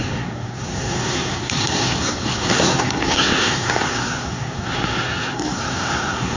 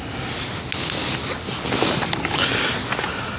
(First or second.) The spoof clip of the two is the first